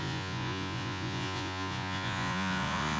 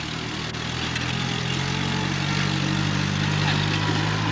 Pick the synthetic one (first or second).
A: first